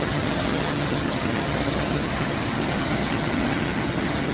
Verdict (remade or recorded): remade